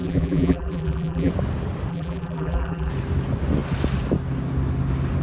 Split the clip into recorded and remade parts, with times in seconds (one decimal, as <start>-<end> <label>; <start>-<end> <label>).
0.0-1.3 remade; 1.3-1.9 recorded; 1.9-2.9 remade; 2.9-5.2 recorded